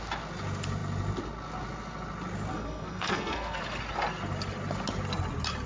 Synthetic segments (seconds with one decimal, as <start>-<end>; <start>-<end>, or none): 2.5-3.6

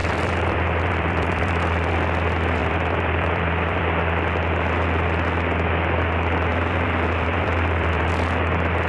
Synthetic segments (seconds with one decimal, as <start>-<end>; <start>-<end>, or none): 0.0-1.9; 2.6-3.8; 6.5-8.1

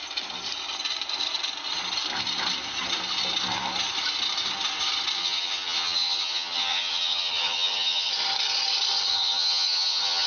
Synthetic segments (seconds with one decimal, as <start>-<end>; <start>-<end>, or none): 5.2-8.1; 9.1-10.3

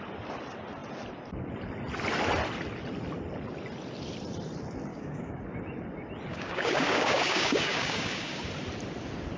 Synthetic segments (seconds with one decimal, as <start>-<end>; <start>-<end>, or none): 4.9-5.4; 6.3-8.4

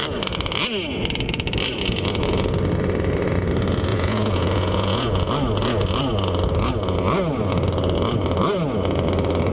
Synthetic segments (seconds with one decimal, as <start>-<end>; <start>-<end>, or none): 3.9-5.3

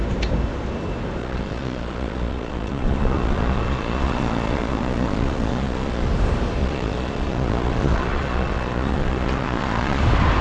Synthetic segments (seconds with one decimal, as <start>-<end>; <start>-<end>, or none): 1.2-6.1; 6.6-10.0

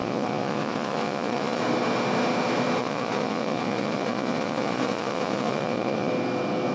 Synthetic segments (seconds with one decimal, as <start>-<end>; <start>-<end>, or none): 0.0-1.6; 2.8-6.1

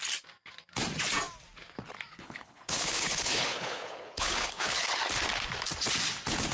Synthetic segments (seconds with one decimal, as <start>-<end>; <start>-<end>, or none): 2.1-4.9